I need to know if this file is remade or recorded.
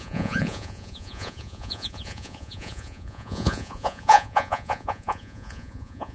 remade